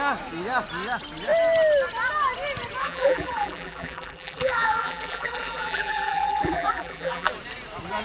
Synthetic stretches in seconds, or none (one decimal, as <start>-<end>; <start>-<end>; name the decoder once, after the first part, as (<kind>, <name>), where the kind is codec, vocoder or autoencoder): 2.8-7.3 (vocoder, BigVGAN v2)